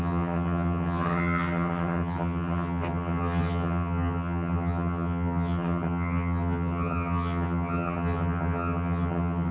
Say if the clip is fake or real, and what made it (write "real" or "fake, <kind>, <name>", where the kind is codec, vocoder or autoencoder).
fake, vocoder, HiFi-GAN